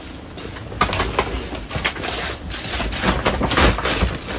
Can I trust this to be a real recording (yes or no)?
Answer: yes